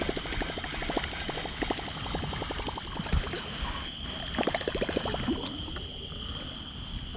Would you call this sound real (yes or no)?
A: yes